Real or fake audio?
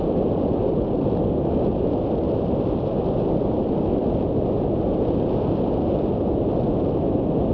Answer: real